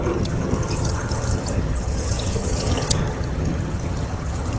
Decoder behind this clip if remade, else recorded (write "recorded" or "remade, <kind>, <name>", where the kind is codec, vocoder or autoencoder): remade, vocoder, HiFi-GAN